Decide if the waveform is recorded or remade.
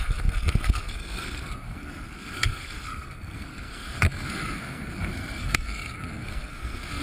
remade